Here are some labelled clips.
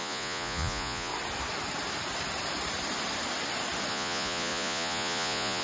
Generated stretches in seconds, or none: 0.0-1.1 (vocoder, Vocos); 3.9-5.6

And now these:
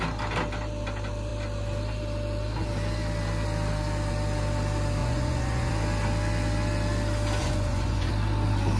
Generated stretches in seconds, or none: 5.0-5.7 (vocoder, Vocos); 7.4-8.1

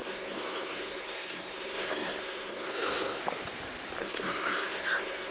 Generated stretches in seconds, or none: 0.0-3.2 (codec, SNAC); 4.0-5.3

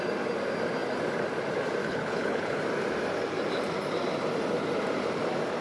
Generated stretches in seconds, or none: 1.8-2.6 (codec, HILCodec)